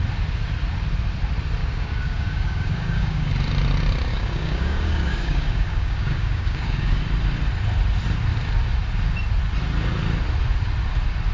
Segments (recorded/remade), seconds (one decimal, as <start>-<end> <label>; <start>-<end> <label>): 0.0-1.6 recorded; 1.6-3.3 remade; 3.3-4.1 recorded; 4.1-7.0 remade; 7.0-11.3 recorded